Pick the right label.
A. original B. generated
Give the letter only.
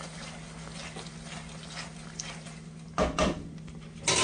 A